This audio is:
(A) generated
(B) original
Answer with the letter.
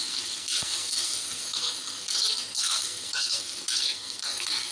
A